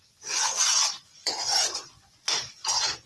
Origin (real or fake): fake